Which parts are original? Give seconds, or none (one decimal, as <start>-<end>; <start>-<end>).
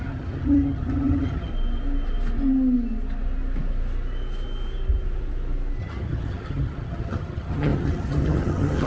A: 1.5-5.8